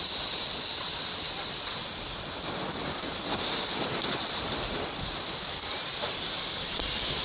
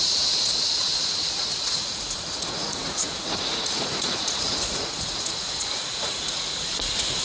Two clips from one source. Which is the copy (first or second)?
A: second